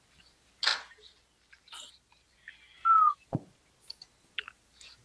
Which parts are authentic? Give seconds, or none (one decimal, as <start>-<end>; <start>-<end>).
0.0-5.0